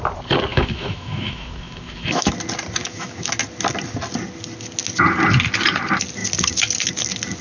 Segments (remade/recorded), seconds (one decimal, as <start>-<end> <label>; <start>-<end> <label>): 0.0-0.5 recorded; 0.5-2.3 remade; 2.3-2.8 recorded; 2.8-3.3 remade; 3.3-7.4 recorded